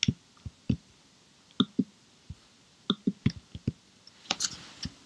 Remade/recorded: recorded